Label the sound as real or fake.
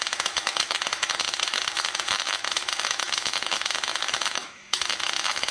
fake